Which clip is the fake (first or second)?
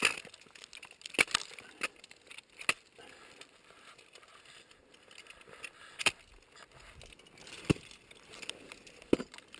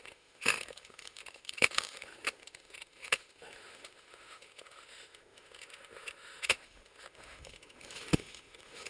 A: second